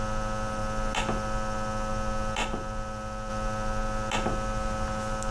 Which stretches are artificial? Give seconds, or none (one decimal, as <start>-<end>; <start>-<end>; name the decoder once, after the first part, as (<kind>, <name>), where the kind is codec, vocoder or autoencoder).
none